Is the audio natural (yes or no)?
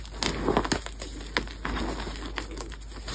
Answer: yes